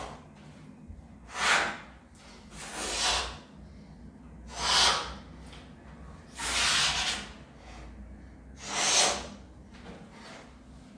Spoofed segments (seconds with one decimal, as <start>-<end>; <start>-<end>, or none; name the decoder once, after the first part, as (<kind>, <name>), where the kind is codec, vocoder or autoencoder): none